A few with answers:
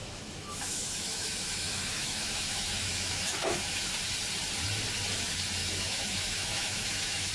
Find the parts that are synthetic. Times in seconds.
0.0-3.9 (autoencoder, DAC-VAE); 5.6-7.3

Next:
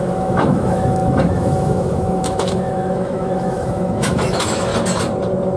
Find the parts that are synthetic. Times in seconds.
0.0-4.7 (autoencoder, DAC-VAE)

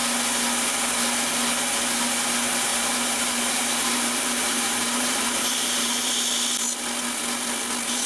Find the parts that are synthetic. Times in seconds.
2.7-6.1 (vocoder, BigVGAN v2)

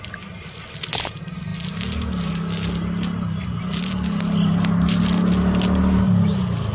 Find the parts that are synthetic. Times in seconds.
none

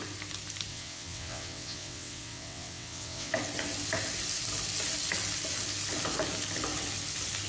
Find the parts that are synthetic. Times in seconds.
0.7-3.3 (vocoder, WaveNeXt)

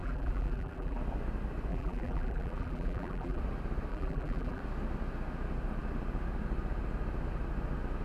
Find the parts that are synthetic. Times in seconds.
0.0-1.0 (vocoder, BigVGAN v2); 1.7-3.4; 3.9-4.6